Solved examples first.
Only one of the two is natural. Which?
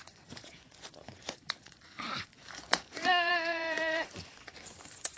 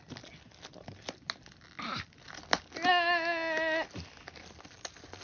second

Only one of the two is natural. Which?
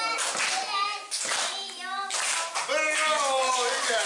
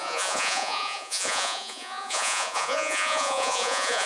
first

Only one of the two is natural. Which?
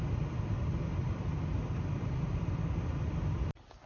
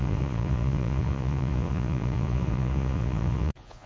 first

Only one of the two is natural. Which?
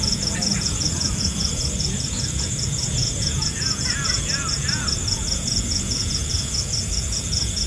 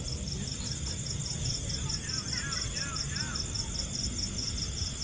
second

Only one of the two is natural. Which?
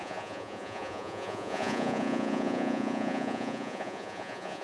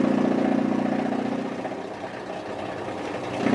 second